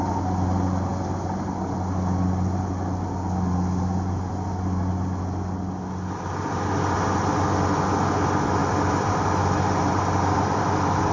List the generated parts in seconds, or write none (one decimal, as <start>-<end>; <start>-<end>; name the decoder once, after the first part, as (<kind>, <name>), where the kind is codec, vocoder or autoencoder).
8.6-11.1 (vocoder, BigVGAN v2)